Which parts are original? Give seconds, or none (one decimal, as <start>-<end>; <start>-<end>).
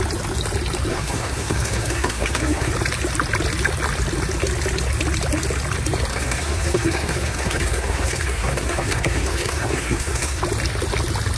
0.0-0.9; 2.7-6.1; 10.4-11.4